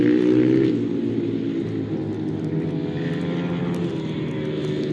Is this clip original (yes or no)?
yes